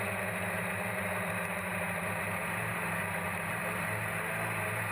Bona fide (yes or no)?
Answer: no